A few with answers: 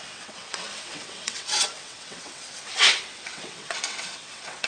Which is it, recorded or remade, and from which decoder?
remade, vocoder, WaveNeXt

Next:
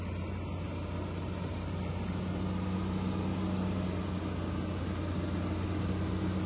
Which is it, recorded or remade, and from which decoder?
recorded